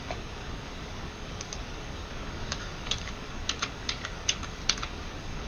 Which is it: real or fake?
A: fake